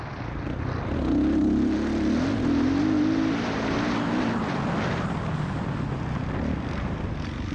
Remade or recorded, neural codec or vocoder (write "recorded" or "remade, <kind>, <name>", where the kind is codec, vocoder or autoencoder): recorded